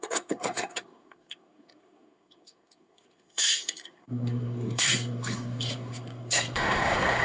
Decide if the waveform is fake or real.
fake